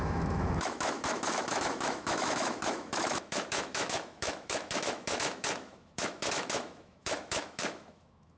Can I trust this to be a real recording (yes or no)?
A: no